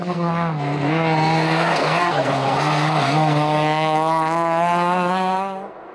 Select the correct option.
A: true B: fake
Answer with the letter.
B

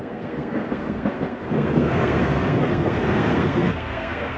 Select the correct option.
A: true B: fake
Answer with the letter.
B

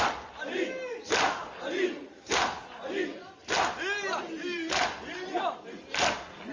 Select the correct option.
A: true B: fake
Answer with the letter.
A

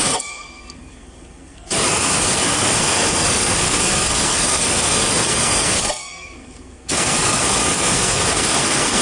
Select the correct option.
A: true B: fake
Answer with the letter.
B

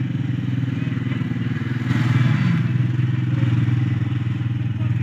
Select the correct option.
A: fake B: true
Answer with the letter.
B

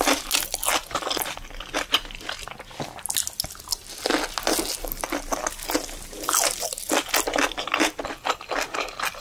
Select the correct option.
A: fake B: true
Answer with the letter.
B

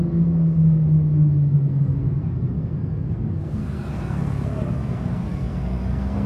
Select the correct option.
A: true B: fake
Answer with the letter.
B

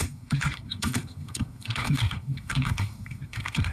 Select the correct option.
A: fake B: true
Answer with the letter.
A